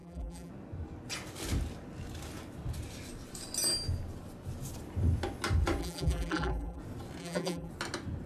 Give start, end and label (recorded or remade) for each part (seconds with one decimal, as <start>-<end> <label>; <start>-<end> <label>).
0.0-0.5 remade; 0.5-5.8 recorded; 5.8-6.8 remade; 6.8-7.2 recorded; 7.2-7.7 remade; 7.7-8.3 recorded